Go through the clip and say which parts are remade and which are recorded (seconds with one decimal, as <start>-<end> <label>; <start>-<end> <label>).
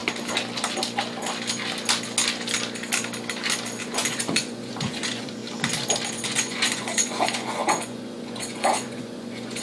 0.0-3.8 recorded; 3.8-5.4 remade; 5.4-6.1 recorded; 6.1-9.6 remade